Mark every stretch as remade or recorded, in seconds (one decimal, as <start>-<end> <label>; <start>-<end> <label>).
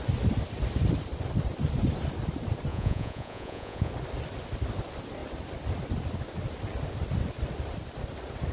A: 0.0-2.7 recorded; 2.7-3.9 remade; 3.9-8.5 recorded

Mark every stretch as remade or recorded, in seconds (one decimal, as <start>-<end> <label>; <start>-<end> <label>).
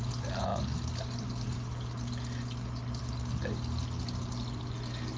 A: 0.0-5.2 recorded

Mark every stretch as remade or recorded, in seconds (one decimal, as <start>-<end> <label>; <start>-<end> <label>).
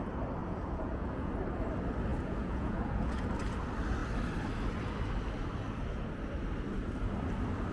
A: 0.0-0.4 recorded; 0.4-1.3 remade; 1.3-2.1 recorded; 2.1-3.2 remade; 3.2-7.7 recorded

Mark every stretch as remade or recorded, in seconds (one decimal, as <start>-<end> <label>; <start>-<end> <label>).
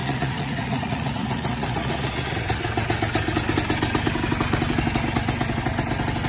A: 0.0-2.6 remade; 2.6-6.3 recorded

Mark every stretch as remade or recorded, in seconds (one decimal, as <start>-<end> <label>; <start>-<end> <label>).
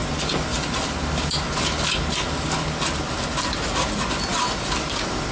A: 0.0-5.3 recorded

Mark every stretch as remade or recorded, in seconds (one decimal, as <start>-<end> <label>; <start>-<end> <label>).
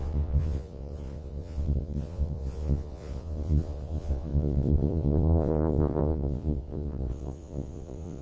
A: 0.0-8.2 remade